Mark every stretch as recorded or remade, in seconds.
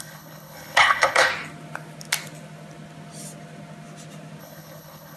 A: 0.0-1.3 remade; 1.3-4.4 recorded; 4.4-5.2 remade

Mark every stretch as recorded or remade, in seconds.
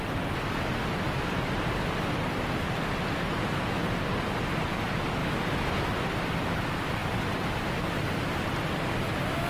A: 0.0-9.5 recorded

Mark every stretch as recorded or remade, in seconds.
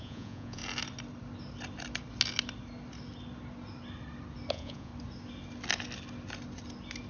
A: 0.0-0.6 remade; 0.6-4.5 recorded; 4.5-4.9 remade; 4.9-7.1 recorded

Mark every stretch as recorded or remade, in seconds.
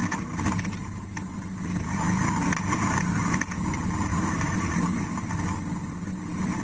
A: 0.0-4.1 recorded; 4.1-5.3 remade; 5.3-6.6 recorded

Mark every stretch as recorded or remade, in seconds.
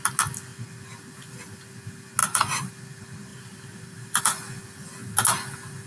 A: 0.0-2.2 recorded; 2.2-2.7 remade; 2.7-3.3 recorded; 3.3-4.2 remade; 4.2-5.9 recorded